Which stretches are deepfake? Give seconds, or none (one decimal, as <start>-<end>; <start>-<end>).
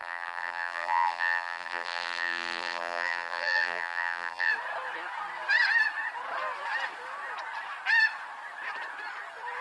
0.0-4.5